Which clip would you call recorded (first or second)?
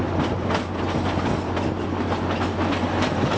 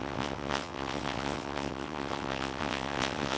first